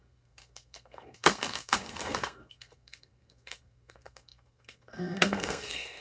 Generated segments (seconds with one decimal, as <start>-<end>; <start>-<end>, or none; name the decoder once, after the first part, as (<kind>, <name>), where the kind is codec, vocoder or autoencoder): 0.0-6.0 (codec, SNAC)